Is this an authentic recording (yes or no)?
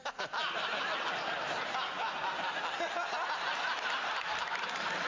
yes